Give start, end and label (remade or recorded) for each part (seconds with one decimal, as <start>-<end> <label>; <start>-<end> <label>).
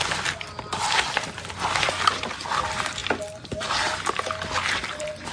0.0-5.3 recorded